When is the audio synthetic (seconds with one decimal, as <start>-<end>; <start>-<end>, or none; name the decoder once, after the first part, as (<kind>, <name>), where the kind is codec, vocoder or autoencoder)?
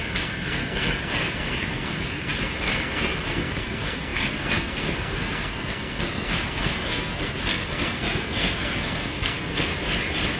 0.0-9.7 (codec, SNAC)